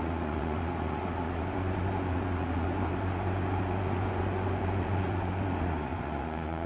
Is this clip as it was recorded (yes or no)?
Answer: no